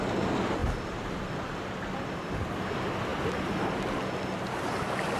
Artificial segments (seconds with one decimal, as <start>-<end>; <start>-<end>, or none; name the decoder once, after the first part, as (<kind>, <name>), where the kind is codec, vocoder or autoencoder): none